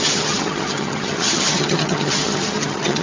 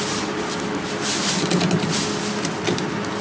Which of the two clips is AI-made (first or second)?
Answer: first